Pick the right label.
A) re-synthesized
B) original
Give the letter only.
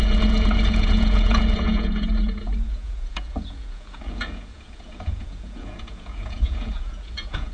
A